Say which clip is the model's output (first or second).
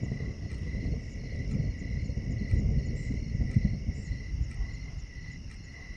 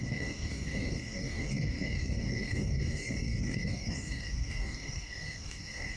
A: second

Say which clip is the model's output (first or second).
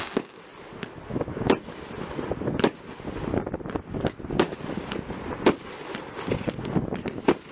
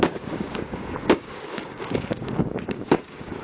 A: second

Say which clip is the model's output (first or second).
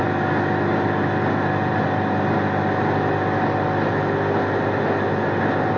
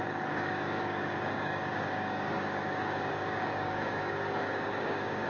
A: second